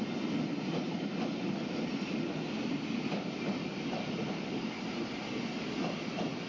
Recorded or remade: recorded